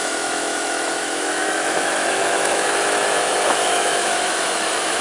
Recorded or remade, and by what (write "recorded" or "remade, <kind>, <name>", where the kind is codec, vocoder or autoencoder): remade, autoencoder, DAC-VAE